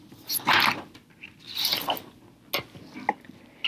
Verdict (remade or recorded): recorded